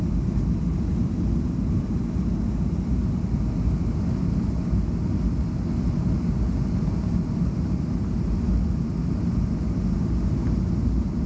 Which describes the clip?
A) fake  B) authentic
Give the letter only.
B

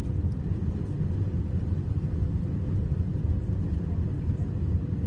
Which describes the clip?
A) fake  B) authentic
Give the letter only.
B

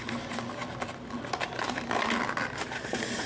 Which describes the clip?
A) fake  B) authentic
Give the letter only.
B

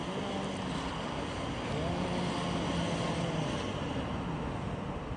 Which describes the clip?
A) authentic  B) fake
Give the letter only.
A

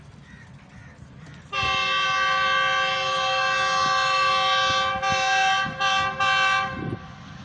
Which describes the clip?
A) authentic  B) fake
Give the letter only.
A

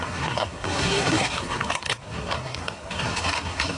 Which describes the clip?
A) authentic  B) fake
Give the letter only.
B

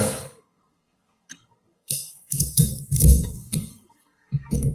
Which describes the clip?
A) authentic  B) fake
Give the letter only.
B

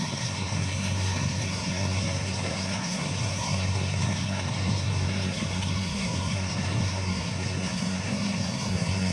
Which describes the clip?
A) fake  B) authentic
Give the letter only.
A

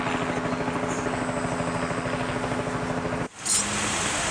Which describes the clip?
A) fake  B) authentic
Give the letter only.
B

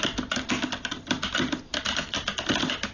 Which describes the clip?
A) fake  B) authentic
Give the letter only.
B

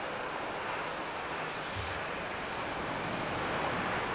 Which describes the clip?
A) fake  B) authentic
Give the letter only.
B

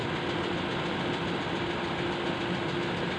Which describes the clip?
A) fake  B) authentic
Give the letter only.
B